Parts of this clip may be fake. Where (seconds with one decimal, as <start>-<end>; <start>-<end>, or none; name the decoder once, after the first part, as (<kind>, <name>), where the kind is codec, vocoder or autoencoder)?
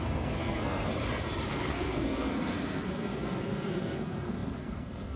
0.0-0.9 (codec, SNAC); 1.5-5.2